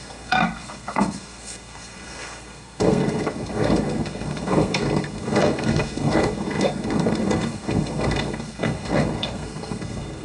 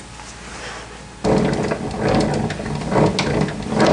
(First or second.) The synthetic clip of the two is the first